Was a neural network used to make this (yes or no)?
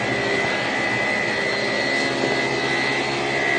no